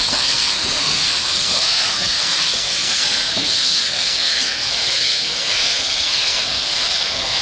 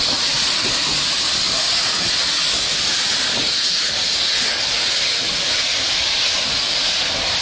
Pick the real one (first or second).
second